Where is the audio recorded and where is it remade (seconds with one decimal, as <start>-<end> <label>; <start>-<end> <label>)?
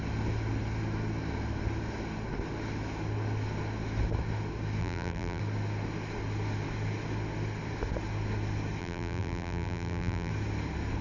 0.0-4.8 recorded; 4.8-5.4 remade; 5.4-8.8 recorded; 8.8-10.3 remade; 10.3-11.0 recorded